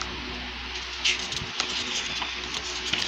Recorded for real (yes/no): yes